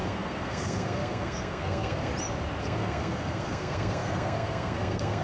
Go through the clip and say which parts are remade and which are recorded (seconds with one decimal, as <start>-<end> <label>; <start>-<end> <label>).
0.0-2.1 remade; 2.1-2.6 recorded; 2.6-5.2 remade